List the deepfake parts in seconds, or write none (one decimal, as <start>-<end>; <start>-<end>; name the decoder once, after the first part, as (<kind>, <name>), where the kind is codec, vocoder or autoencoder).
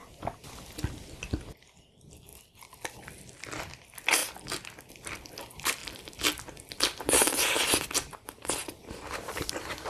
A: 1.5-2.3 (vocoder, BigVGAN v2); 3.0-4.2; 4.9-9.9